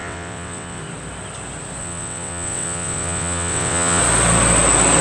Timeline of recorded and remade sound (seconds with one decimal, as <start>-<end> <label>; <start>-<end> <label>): 0.0-0.8 remade; 0.8-1.8 recorded; 1.8-4.0 remade; 4.0-5.0 recorded